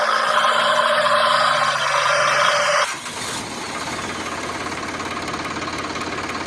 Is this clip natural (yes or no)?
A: yes